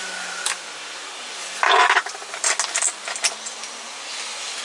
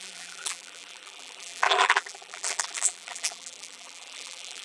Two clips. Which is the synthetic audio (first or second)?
second